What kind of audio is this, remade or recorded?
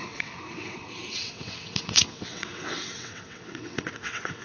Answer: remade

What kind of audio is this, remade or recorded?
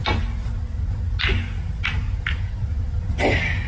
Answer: recorded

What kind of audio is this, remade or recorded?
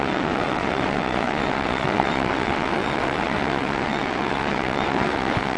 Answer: remade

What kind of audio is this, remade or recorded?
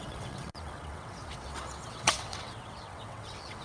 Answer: remade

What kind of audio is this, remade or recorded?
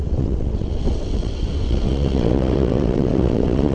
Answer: remade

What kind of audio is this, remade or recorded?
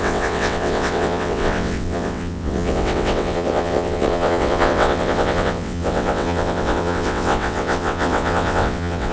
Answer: remade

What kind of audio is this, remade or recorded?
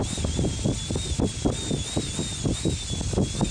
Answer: recorded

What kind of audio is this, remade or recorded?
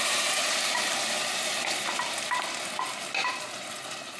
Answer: recorded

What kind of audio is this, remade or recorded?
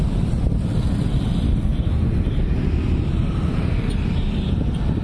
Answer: recorded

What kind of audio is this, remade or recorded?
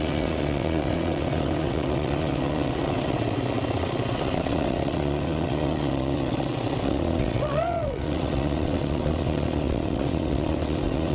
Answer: remade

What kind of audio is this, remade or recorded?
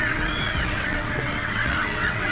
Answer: remade